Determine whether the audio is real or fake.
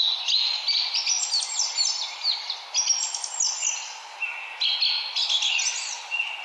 real